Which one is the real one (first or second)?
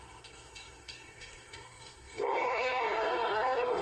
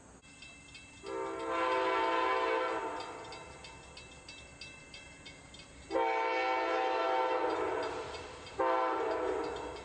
second